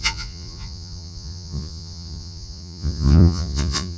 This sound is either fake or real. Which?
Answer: fake